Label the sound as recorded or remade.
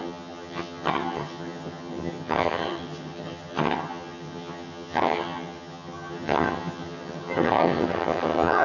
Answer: remade